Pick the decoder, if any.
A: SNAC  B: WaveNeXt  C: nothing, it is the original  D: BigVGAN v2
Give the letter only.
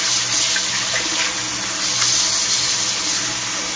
C